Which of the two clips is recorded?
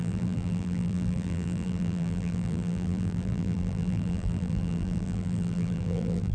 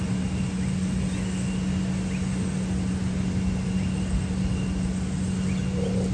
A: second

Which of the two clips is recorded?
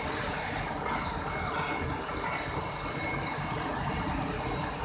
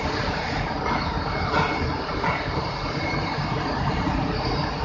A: first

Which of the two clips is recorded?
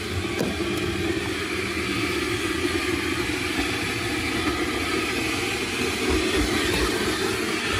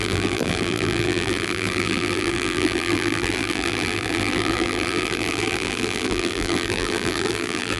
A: first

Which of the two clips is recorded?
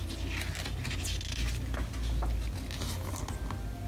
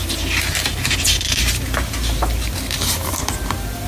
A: first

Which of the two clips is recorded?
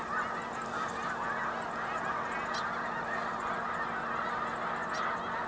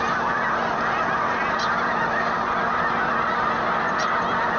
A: first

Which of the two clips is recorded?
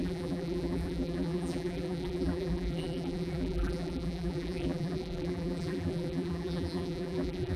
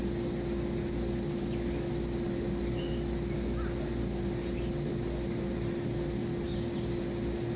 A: second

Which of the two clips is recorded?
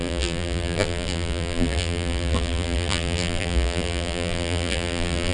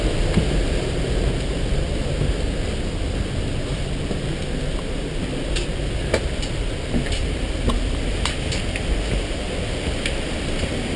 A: second